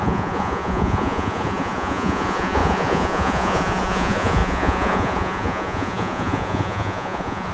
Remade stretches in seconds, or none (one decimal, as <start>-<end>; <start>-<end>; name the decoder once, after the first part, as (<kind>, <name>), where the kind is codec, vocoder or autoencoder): 0.0-7.5 (vocoder, Vocos)